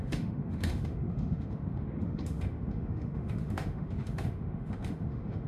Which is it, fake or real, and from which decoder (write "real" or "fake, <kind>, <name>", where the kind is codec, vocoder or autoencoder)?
fake, autoencoder, DAC-VAE